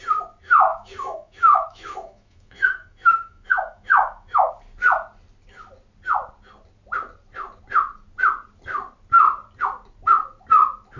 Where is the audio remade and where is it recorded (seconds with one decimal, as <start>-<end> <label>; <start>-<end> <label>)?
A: 0.0-0.7 recorded; 0.7-4.5 remade; 4.5-11.0 recorded

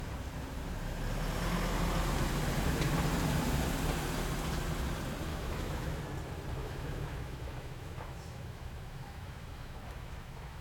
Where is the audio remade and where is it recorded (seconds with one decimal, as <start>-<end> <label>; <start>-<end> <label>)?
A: 0.0-5.3 recorded; 5.3-6.0 remade; 6.0-6.6 recorded; 6.6-10.6 remade

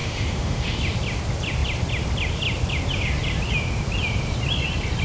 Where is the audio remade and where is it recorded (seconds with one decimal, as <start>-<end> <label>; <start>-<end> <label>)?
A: 0.0-0.8 remade; 0.8-5.0 recorded

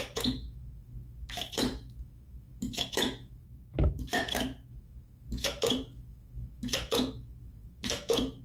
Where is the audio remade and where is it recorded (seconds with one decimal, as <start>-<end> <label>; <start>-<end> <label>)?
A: 0.0-8.4 remade

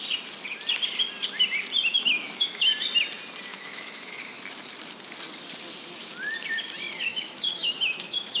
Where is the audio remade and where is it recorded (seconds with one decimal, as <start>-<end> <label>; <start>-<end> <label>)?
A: 0.0-1.9 recorded; 1.9-2.7 remade; 2.7-3.5 recorded; 3.5-4.4 remade; 4.4-7.1 recorded; 7.1-8.4 remade

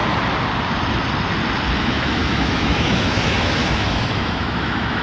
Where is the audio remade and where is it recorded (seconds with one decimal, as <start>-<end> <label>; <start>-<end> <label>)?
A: 0.0-1.8 recorded; 1.8-5.0 remade

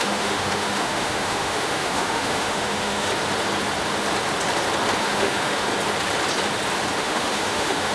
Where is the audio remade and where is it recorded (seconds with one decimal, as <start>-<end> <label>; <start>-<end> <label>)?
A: 0.0-3.1 remade; 3.1-5.0 recorded; 5.0-5.7 remade; 5.7-7.0 recorded; 7.0-7.9 remade